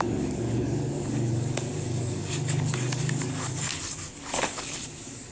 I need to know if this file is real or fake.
fake